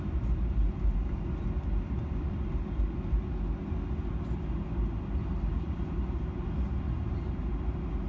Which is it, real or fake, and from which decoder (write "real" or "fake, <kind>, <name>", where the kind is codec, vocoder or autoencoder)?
real